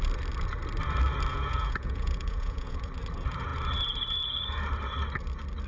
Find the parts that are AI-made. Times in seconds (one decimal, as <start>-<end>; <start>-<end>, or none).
1.3-2.9